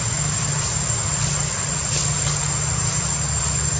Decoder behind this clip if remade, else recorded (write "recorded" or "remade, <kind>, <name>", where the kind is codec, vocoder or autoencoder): recorded